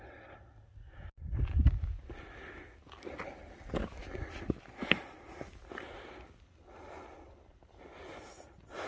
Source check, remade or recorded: recorded